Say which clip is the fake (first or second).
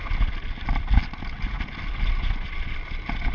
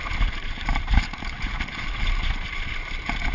second